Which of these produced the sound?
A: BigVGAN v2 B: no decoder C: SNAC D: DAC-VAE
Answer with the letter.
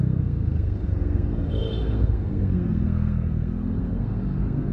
C